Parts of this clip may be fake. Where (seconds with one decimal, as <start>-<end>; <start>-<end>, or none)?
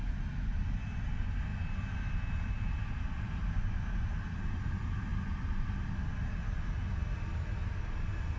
none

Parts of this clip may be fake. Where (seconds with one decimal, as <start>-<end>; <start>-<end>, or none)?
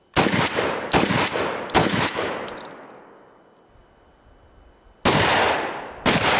1.8-2.3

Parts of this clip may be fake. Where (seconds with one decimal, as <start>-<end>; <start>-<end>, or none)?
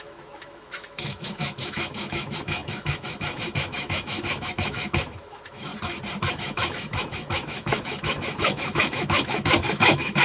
0.0-5.7; 6.3-10.2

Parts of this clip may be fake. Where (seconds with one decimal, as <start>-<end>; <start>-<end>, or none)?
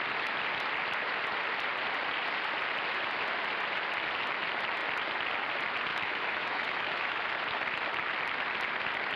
5.9-7.3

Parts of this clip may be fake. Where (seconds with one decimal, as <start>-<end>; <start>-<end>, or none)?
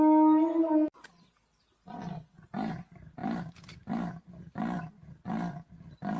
none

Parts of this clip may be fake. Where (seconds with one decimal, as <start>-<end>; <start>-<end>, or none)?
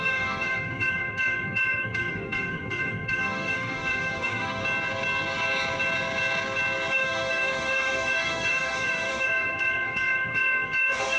0.0-4.6; 6.9-11.2